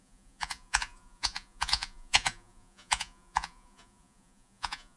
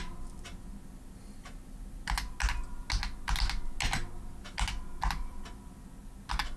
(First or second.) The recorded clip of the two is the second